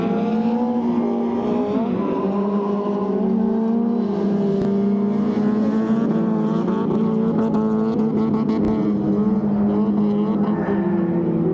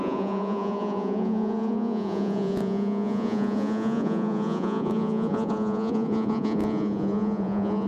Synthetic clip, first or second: second